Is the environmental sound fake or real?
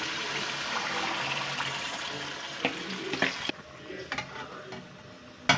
real